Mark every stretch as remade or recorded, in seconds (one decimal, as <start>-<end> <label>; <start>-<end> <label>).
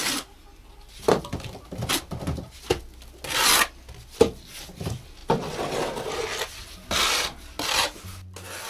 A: 0.0-8.7 recorded